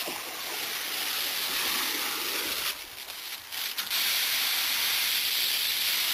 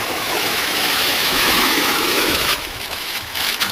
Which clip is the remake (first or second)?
second